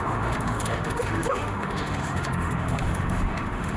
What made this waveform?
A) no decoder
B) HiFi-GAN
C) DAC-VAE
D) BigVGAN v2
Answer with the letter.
C